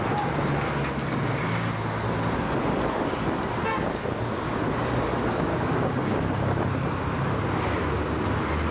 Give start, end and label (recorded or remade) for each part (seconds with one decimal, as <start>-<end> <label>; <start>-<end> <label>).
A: 0.0-5.5 recorded; 5.5-6.4 remade; 6.4-8.7 recorded

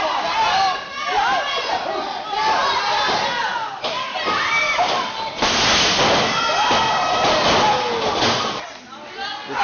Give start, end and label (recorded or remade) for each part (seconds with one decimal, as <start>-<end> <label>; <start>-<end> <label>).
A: 0.0-9.6 recorded

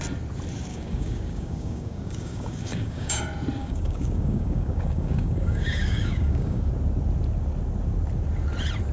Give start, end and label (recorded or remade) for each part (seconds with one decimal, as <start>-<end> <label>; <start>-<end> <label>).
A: 0.0-0.7 recorded; 0.7-3.2 remade; 3.2-3.6 recorded; 3.6-6.7 remade; 6.7-8.9 recorded